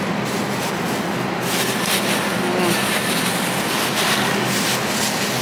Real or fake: real